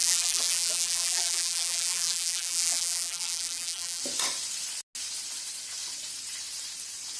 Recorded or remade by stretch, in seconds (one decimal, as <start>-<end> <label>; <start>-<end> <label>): 0.0-4.0 remade; 4.0-7.2 recorded